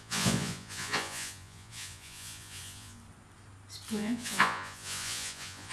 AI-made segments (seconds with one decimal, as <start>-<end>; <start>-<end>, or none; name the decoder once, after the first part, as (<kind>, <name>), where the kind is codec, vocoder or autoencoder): 0.0-3.0 (vocoder, Vocos); 3.9-5.7